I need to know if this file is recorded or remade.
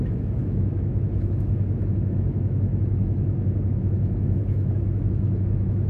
remade